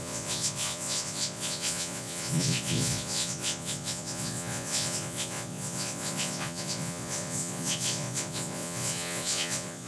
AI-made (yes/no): yes